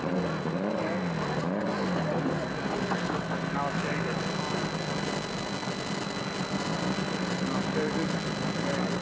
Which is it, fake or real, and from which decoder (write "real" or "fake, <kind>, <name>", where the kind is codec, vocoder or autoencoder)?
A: real